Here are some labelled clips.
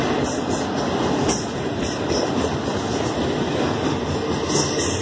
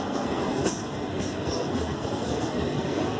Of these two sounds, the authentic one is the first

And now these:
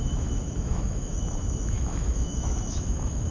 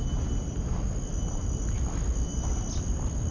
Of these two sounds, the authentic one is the second